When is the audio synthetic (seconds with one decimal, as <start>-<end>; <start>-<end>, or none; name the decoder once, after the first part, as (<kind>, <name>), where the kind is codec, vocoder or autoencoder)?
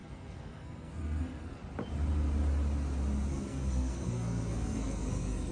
0.0-1.6 (codec, SNAC); 3.3-5.5